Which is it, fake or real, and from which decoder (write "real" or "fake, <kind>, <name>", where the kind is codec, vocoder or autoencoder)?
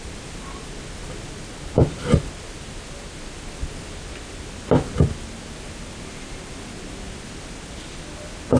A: real